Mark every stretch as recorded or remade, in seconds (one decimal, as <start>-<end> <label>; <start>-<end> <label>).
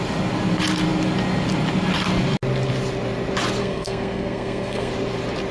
0.0-3.6 recorded; 3.6-4.9 remade; 4.9-5.5 recorded